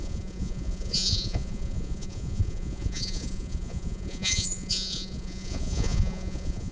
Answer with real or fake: fake